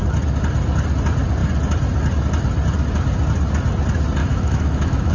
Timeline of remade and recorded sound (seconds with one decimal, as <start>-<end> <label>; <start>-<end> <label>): 0.0-4.2 recorded; 4.2-5.1 remade

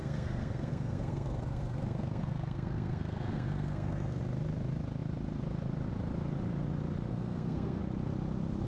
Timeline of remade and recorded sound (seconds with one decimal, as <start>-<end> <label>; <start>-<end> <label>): 0.0-4.2 remade; 4.2-7.1 recorded; 7.1-7.8 remade; 7.8-8.7 recorded

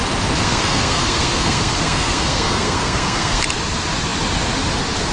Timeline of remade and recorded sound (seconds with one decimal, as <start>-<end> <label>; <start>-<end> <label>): 0.0-0.4 recorded; 0.4-3.4 remade; 3.4-5.1 recorded

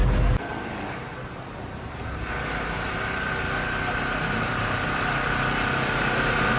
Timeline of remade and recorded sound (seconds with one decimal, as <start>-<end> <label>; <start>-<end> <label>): 0.0-6.6 recorded

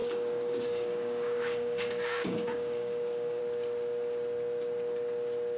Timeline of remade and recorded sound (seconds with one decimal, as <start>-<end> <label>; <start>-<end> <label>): 0.0-3.4 remade; 3.4-5.6 recorded